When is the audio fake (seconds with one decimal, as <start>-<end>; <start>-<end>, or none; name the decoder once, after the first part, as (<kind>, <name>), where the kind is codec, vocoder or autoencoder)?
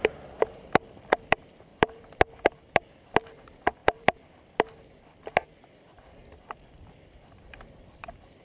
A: 1.7-3.0 (vocoder, BigVGAN v2); 3.8-4.7